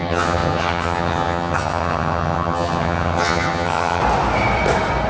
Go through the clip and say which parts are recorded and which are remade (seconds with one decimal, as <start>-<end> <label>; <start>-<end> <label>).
0.0-4.0 remade; 4.0-5.1 recorded